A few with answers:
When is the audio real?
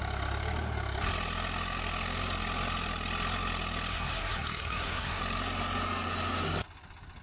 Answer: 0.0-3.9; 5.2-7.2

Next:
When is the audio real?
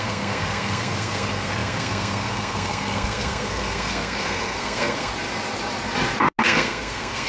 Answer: 5.1-6.4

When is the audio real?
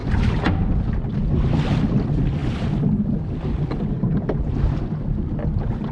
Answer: 0.0-5.9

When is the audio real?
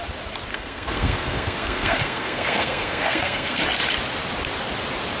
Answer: 0.0-0.5; 3.6-5.2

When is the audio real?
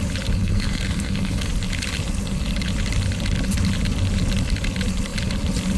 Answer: 0.0-0.4; 1.5-5.8